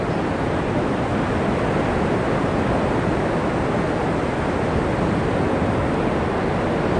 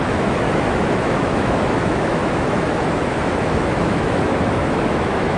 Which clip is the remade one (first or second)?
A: second